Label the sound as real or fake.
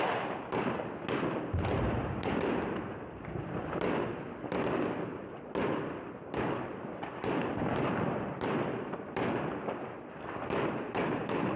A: fake